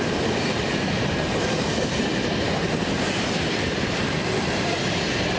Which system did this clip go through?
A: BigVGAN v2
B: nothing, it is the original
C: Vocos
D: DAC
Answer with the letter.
A